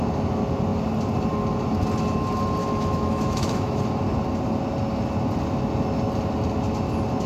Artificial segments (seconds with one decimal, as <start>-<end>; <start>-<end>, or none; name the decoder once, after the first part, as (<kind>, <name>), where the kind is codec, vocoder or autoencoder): 2.6-3.8 (autoencoder, DAC-VAE)